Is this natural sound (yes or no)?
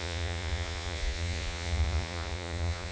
no